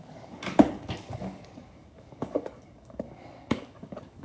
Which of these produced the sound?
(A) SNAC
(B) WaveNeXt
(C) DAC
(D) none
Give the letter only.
C